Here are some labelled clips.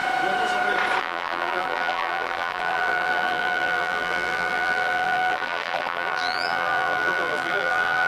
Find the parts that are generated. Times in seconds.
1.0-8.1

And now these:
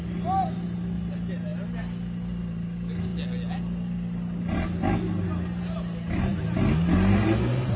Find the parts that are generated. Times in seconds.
none

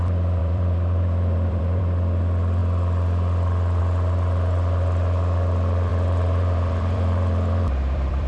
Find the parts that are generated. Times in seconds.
0.4-1.8; 5.9-8.3

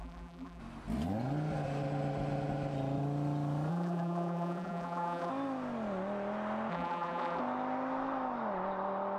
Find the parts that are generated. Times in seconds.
0.0-0.6; 3.7-5.3; 6.7-7.4

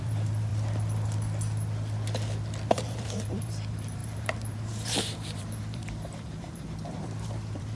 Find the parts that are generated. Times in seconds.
0.0-0.5; 2.7-7.8